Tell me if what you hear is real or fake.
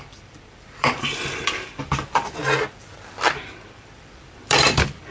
fake